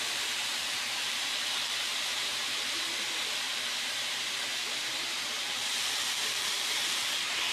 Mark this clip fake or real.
fake